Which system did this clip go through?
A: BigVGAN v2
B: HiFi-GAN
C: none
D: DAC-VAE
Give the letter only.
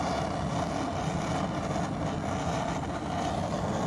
C